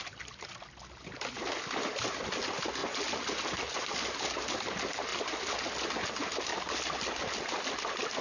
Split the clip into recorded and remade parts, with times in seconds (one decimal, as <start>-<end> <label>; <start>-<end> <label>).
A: 0.0-8.2 recorded